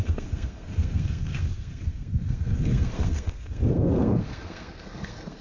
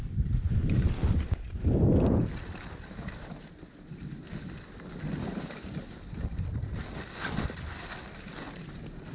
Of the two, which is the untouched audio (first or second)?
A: second